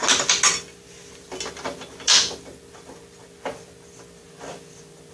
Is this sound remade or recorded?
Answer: recorded